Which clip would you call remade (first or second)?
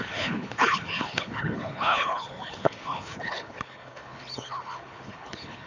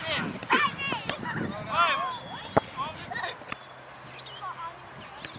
first